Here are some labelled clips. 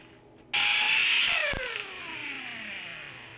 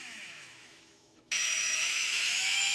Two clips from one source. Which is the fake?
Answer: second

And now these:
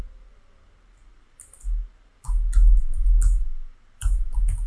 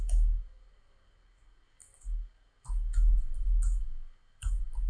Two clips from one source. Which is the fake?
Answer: second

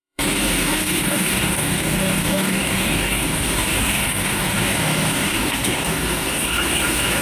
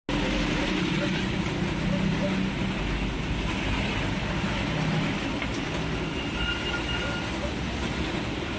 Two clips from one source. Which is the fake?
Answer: first